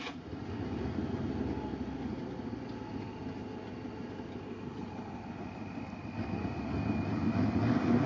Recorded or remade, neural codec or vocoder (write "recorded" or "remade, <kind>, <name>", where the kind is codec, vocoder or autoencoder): recorded